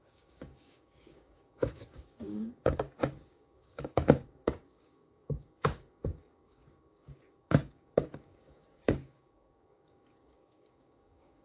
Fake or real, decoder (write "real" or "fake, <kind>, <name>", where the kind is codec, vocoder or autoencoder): fake, codec, DAC